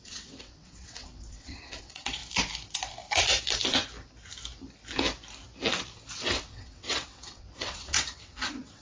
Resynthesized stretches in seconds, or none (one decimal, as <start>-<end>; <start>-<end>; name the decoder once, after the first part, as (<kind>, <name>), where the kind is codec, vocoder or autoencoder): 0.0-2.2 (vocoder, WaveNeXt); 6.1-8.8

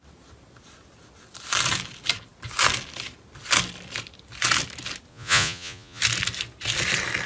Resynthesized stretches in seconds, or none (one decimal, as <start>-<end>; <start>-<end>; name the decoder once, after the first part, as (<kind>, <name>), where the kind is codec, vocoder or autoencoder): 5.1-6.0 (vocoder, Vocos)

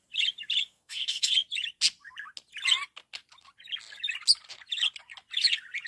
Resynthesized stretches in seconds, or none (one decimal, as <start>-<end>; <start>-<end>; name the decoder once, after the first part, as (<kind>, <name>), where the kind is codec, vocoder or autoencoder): 0.6-1.3 (codec, SNAC)